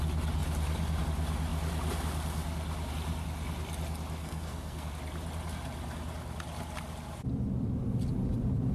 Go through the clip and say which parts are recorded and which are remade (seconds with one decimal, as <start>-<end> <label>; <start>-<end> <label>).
0.0-4.2 recorded; 4.2-4.9 remade; 4.9-8.7 recorded